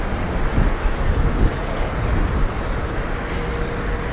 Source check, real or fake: real